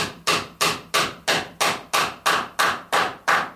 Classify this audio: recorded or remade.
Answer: recorded